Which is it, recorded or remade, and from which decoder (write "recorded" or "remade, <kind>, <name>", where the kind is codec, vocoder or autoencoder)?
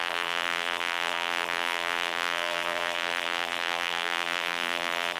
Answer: remade, vocoder, BigVGAN v2